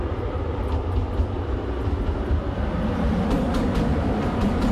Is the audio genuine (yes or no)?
yes